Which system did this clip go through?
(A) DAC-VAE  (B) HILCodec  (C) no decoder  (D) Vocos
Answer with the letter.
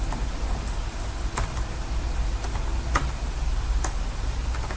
C